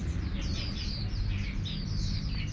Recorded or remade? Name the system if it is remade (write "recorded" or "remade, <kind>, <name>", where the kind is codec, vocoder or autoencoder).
recorded